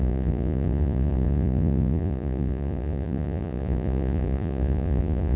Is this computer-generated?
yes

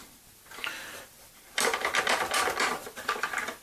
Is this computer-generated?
no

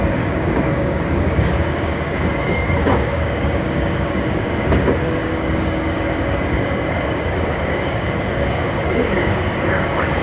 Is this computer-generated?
yes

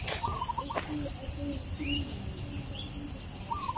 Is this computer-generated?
no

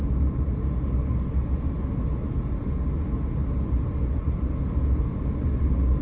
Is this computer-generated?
no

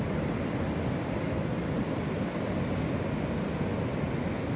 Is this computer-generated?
no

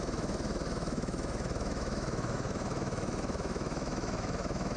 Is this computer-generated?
yes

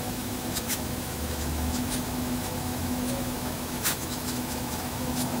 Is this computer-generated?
yes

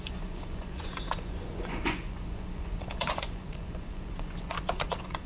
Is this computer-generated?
yes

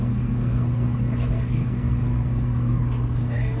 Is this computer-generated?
yes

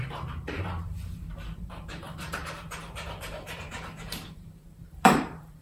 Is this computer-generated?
yes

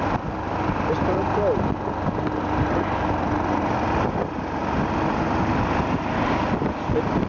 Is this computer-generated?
no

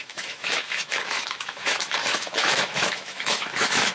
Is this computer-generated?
yes